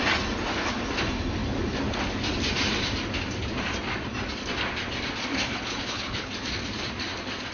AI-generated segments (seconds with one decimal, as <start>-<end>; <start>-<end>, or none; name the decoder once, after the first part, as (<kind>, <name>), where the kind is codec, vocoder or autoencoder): 5.3-6.3 (codec, HILCodec)